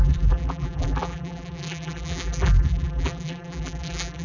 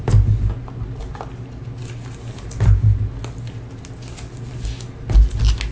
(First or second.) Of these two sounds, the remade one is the first